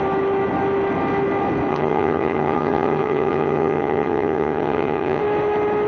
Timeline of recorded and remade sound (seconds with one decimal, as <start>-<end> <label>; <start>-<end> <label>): 0.0-1.7 recorded; 1.7-5.2 remade; 5.2-5.9 recorded